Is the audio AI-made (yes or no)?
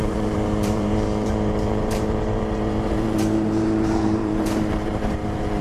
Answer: yes